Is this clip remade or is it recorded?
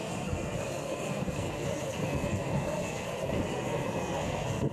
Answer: remade